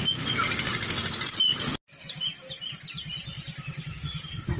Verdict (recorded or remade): recorded